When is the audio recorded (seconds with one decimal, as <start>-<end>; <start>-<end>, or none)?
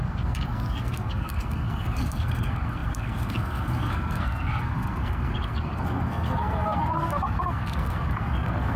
none